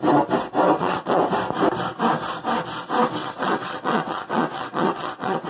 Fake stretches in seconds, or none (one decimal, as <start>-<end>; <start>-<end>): 0.8-1.3; 3.2-5.5